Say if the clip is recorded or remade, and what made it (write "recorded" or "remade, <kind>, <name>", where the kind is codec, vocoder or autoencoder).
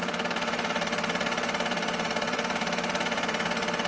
remade, vocoder, BigVGAN v2